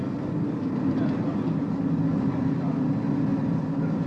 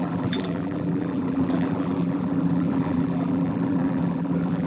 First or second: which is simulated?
second